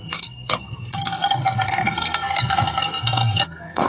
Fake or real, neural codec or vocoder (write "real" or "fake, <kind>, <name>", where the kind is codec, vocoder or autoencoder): fake, codec, SNAC